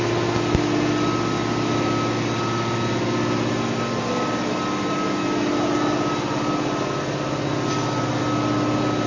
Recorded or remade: recorded